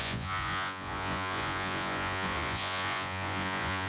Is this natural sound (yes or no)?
no